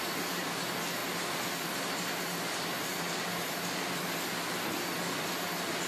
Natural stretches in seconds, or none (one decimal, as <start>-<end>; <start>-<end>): 0.0-5.9

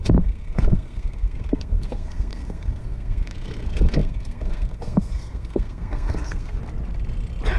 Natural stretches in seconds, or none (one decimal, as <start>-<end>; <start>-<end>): 6.6-7.6

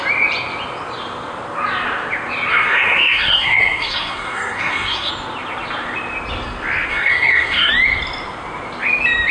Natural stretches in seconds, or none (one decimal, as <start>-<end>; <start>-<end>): 0.0-2.5; 5.1-6.9; 7.7-9.3

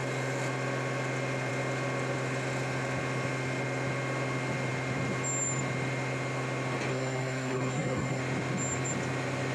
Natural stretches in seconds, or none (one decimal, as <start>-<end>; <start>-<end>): 0.0-6.9; 8.2-9.5